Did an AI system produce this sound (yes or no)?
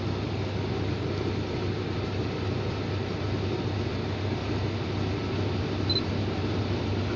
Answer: no